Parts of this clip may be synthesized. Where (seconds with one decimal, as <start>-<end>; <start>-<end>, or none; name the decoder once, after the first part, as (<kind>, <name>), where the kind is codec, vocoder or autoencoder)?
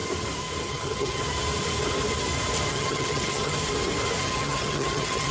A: 0.6-1.2 (vocoder, HiFi-GAN); 2.7-3.5; 4.2-5.3